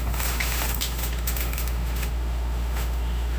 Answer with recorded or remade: remade